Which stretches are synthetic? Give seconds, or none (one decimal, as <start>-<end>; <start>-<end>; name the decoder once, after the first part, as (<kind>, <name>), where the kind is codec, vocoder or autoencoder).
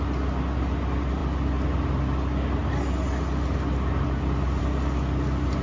none